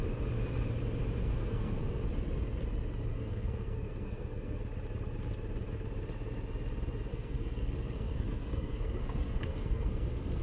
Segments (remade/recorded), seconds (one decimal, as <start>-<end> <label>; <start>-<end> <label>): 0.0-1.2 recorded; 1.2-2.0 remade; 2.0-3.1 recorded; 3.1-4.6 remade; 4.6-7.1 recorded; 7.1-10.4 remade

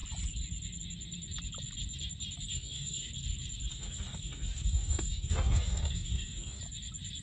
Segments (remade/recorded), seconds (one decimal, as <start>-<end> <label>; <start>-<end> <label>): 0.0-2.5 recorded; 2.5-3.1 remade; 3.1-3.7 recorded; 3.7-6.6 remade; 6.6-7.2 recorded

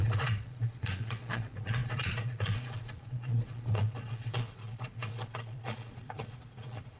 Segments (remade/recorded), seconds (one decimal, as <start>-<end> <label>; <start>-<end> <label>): 0.0-7.0 remade

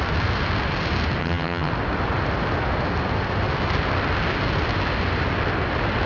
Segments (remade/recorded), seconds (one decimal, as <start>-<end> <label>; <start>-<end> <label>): 0.0-1.2 recorded; 1.2-1.7 remade; 1.7-6.1 recorded

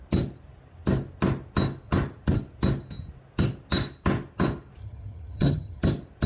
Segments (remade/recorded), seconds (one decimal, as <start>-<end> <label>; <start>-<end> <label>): 0.0-4.8 recorded; 4.8-5.8 remade; 5.8-6.3 recorded